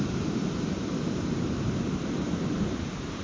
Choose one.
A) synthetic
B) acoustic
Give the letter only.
A